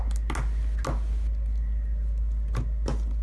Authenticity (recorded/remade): recorded